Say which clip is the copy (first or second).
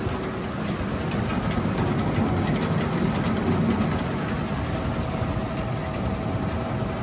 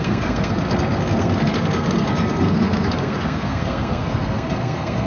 second